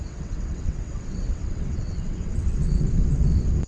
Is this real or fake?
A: fake